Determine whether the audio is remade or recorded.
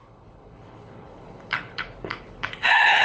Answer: remade